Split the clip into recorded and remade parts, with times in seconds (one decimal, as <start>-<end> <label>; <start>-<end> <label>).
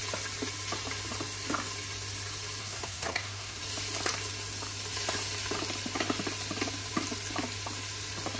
0.0-2.6 recorded; 2.6-3.6 remade; 3.6-8.4 recorded